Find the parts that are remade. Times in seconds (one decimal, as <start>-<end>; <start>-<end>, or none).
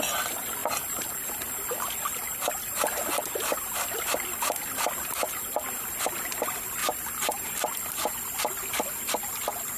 6.8-7.5